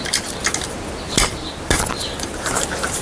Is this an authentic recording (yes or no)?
yes